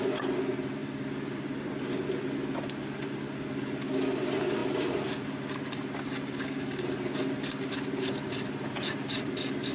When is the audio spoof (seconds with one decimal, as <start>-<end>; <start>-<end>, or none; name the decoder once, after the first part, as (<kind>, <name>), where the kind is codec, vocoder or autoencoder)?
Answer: none

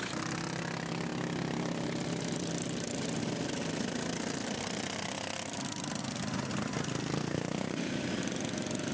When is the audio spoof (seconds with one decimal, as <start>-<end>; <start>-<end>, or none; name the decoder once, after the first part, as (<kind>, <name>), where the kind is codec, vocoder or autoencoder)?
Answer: 7.2-7.9 (codec, SNAC)

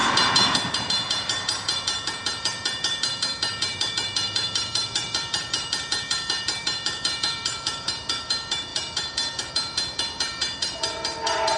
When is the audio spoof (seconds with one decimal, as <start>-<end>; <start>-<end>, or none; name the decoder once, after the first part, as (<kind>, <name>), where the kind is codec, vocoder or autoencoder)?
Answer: 0.0-11.6 (vocoder, BigVGAN v2)

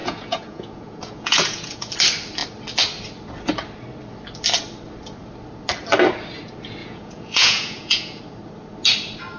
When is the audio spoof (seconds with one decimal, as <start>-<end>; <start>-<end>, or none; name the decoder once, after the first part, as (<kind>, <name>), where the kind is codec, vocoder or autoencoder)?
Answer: 0.0-1.9 (vocoder, Vocos); 6.8-8.2

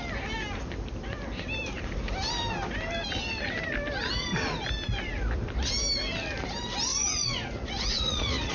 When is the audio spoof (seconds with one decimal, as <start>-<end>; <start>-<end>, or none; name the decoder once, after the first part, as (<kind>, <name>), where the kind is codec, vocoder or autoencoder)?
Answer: 6.9-8.5 (vocoder, Vocos)

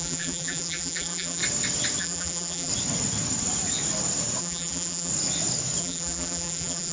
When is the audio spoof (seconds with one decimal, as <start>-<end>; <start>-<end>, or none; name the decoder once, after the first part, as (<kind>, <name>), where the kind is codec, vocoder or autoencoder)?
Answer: 0.0-1.4 (vocoder, BigVGAN v2); 2.0-2.7; 4.4-5.1; 5.8-6.9